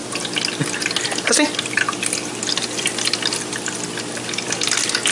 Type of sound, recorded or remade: recorded